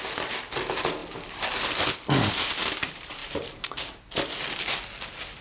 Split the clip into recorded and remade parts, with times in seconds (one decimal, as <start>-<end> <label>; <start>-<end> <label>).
0.0-5.4 recorded